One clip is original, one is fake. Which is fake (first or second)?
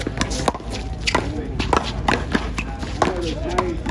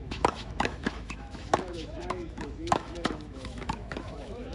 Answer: second